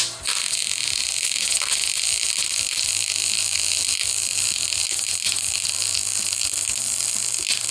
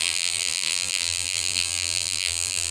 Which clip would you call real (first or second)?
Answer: first